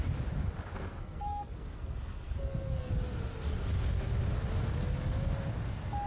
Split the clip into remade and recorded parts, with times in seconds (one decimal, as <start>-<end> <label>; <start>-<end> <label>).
0.0-0.7 recorded; 0.7-2.9 remade; 2.9-6.1 recorded